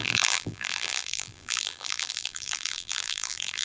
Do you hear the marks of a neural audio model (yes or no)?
yes